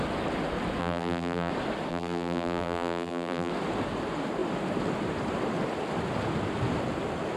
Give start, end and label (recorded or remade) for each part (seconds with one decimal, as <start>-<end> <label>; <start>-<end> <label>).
0.0-0.8 recorded; 0.8-1.5 remade; 1.5-1.9 recorded; 1.9-3.5 remade; 3.5-7.4 recorded